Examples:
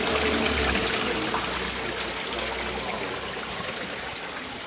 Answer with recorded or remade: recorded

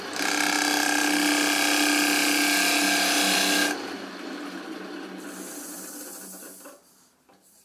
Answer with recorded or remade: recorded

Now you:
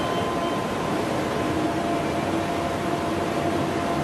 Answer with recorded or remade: recorded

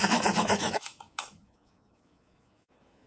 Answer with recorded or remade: remade